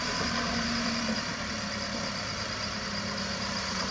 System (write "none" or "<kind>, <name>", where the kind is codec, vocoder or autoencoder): vocoder, BigVGAN v2